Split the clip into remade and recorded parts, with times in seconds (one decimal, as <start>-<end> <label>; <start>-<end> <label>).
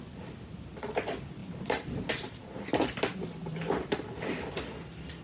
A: 0.0-1.4 recorded; 1.4-4.5 remade; 4.5-5.2 recorded